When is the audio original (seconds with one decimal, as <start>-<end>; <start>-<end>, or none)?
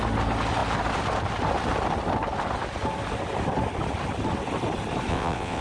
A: 0.0-5.1